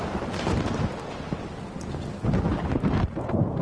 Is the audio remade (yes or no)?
no